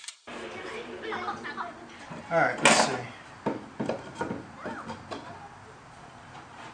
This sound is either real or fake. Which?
real